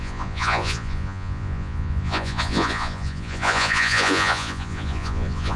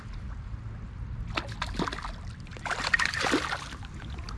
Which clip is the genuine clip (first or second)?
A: second